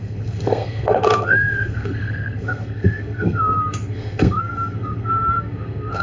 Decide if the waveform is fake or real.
fake